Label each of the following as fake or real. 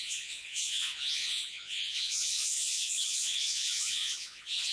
fake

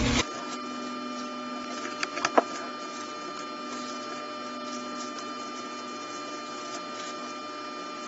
real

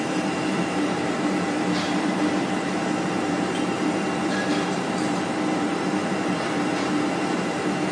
fake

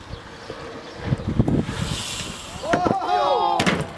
real